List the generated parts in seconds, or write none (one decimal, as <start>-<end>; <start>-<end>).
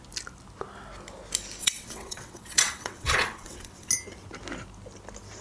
1.6-3.9